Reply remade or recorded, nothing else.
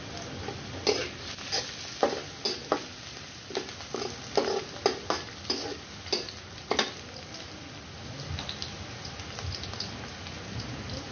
recorded